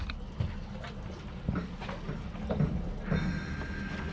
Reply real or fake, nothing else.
real